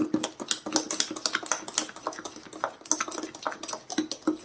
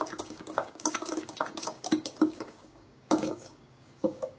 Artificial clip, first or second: second